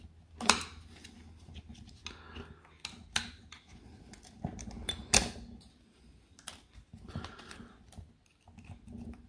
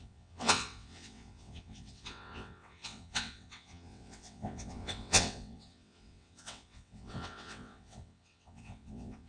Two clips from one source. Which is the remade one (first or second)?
second